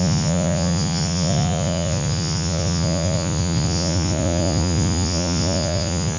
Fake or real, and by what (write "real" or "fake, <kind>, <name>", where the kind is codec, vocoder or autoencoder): fake, vocoder, Vocos